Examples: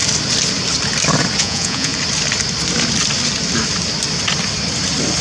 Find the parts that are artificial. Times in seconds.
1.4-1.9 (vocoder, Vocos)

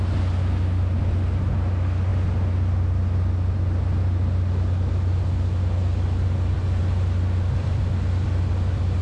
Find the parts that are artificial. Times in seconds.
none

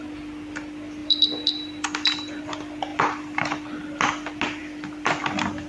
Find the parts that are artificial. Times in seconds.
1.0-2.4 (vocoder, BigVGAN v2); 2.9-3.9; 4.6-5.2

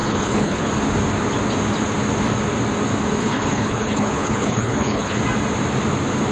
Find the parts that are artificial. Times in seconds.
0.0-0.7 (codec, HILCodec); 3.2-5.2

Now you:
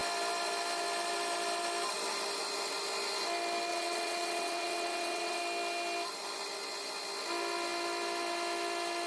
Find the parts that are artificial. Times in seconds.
3.7-5.4 (vocoder, WaveNeXt)

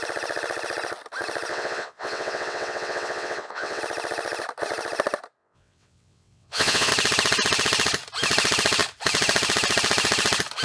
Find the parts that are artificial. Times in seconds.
1.5-3.8 (vocoder, WaveNeXt); 5.4-6.9